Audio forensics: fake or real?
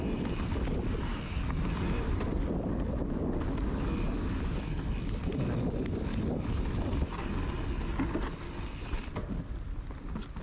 real